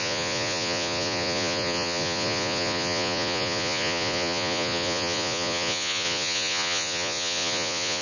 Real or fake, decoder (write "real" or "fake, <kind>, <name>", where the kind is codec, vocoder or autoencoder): fake, vocoder, Vocos